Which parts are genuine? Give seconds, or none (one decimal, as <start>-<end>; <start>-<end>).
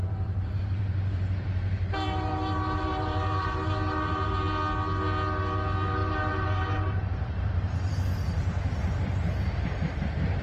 4.4-6.0; 7.9-10.4